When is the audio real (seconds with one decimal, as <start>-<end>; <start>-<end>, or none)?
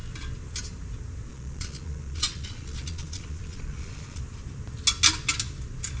0.0-1.3; 4.2-6.0